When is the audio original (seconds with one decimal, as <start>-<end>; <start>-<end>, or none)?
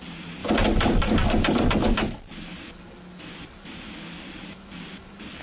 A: 0.0-5.4